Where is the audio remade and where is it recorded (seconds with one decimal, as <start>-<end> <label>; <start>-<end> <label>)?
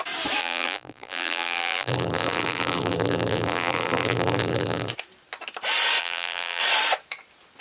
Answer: 0.0-0.4 recorded; 0.4-4.9 remade; 4.9-6.0 recorded; 6.0-6.6 remade; 6.6-7.6 recorded